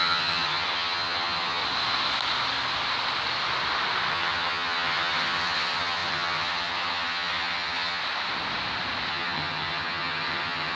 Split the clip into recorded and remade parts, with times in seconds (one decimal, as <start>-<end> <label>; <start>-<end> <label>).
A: 0.0-1.6 remade; 1.6-4.1 recorded; 4.1-8.0 remade; 8.0-9.1 recorded; 9.1-10.7 remade